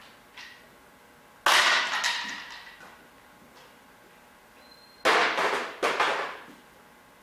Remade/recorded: recorded